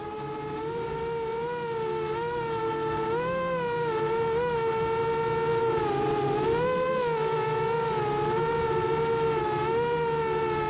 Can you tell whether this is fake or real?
real